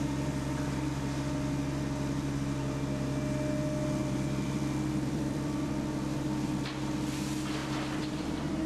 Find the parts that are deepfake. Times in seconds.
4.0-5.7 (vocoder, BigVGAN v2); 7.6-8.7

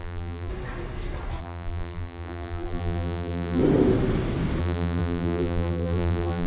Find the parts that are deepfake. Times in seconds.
0.0-0.5 (vocoder, BigVGAN v2); 1.4-3.6; 4.6-6.5

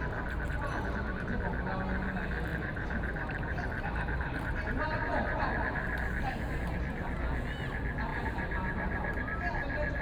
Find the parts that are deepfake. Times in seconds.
2.5-5.5 (vocoder, BigVGAN v2); 8.1-9.2

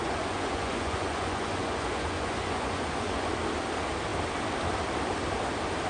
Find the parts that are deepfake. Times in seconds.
0.0-3.3 (vocoder, Vocos)

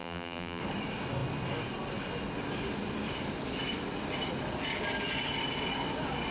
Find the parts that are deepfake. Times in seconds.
0.0-0.6 (vocoder, BigVGAN v2)